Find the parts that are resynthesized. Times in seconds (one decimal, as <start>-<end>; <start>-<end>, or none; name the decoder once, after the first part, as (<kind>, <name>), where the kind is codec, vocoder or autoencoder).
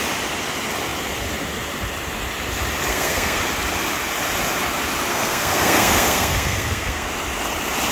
2.9-3.4 (codec, SNAC); 5.1-7.1